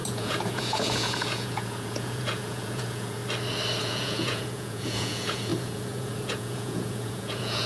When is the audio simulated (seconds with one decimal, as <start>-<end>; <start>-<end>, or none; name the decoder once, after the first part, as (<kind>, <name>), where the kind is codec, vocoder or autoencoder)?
0.0-3.2 (vocoder, Vocos); 3.8-7.7